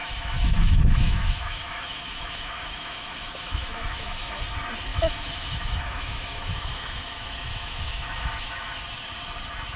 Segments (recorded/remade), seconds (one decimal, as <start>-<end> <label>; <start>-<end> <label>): 0.0-4.4 remade; 4.4-4.9 recorded; 4.9-8.8 remade; 8.8-9.8 recorded